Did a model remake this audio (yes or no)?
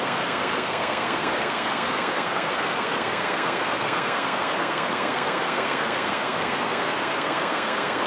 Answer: yes